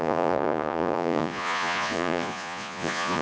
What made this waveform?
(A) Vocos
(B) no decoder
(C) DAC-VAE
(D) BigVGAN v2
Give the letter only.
A